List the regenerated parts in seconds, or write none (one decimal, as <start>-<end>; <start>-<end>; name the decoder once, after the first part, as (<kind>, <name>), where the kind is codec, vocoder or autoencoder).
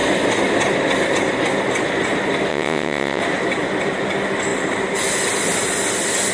2.5-3.2 (vocoder, WaveNeXt)